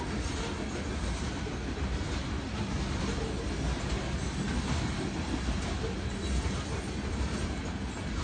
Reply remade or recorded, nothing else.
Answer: recorded